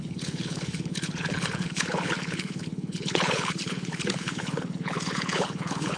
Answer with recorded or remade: remade